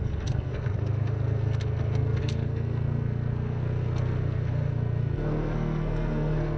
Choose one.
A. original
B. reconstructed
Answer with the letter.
B